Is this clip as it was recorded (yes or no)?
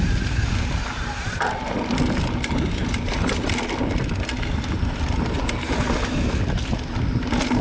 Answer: yes